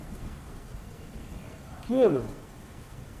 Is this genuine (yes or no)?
no